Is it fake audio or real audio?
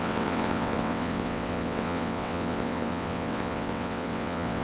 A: fake